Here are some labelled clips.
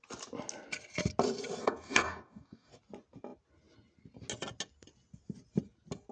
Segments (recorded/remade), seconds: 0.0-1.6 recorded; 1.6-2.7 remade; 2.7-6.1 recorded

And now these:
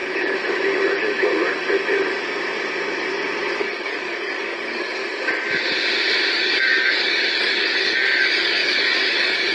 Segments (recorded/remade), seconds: 0.0-3.5 recorded; 3.5-5.0 remade; 5.0-6.3 recorded; 6.3-9.5 remade

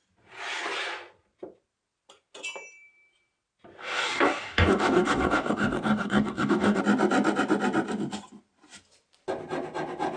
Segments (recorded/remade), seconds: 0.0-3.8 recorded; 3.8-6.8 remade; 6.8-10.2 recorded

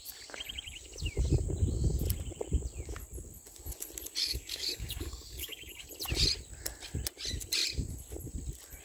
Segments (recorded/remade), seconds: 0.0-4.2 recorded; 4.2-5.9 remade; 5.9-8.8 recorded

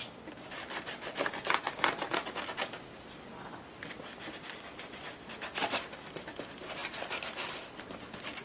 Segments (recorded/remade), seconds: 0.0-0.6 recorded; 0.6-1.3 remade; 1.3-8.4 recorded

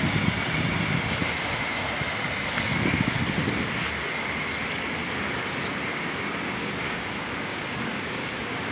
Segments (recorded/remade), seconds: 0.0-5.9 recorded; 5.9-8.7 remade

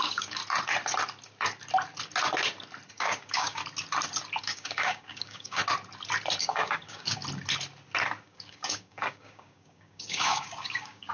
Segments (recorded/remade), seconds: 0.0-0.4 remade; 0.4-2.9 recorded; 2.9-3.6 remade; 3.6-4.4 recorded; 4.4-5.6 remade; 5.6-6.4 recorded; 6.4-7.2 remade; 7.2-8.2 recorded; 8.2-11.1 remade